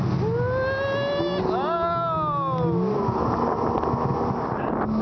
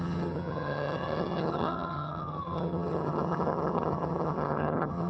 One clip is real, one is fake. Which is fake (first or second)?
second